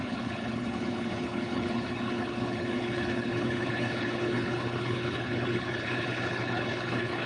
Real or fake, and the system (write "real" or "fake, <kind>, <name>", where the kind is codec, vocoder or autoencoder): fake, codec, HILCodec